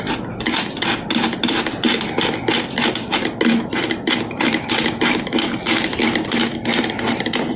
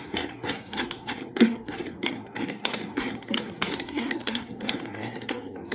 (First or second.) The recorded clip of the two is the first